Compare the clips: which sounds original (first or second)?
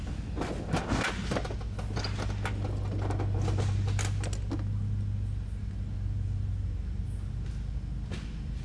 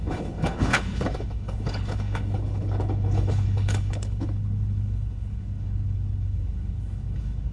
first